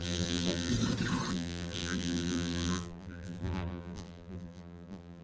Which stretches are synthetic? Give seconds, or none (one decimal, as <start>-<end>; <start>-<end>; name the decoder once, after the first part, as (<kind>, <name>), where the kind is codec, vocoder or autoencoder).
0.0-0.7 (vocoder, BigVGAN v2); 1.3-5.2